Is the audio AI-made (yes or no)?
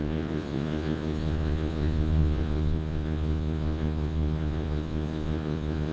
yes